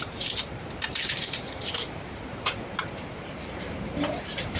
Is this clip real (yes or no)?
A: no